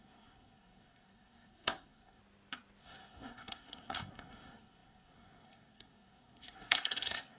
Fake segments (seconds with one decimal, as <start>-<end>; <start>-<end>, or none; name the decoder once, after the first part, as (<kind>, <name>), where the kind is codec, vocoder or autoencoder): 0.0-2.2 (codec, SNAC); 2.8-7.4